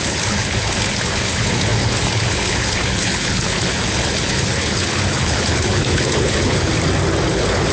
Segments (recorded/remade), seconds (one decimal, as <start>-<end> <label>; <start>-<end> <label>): 0.0-6.7 remade; 6.7-7.3 recorded; 7.3-7.7 remade